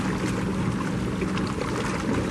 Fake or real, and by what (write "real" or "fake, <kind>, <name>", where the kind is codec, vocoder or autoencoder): real